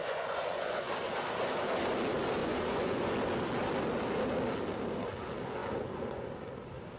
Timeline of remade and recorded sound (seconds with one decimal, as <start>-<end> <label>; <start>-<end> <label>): 0.0-0.9 remade; 0.9-2.4 recorded; 2.4-3.1 remade; 3.1-5.6 recorded; 5.6-6.3 remade; 6.3-7.0 recorded